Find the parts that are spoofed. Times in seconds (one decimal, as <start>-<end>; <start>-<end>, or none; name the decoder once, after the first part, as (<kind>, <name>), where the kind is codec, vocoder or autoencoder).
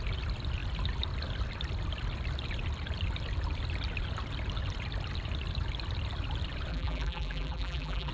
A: 6.7-8.1 (vocoder, BigVGAN v2)